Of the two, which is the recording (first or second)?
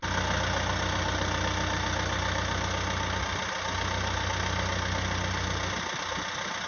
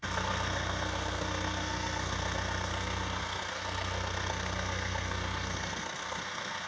first